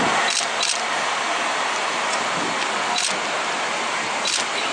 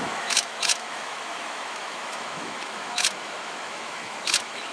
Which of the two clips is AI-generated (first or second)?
second